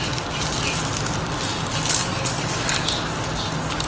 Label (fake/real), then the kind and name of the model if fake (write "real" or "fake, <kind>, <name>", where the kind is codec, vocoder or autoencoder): real